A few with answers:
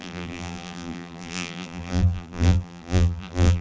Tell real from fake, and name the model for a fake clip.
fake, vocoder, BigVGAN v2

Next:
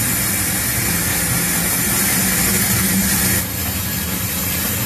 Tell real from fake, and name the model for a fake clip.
real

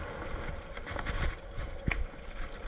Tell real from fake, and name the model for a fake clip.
real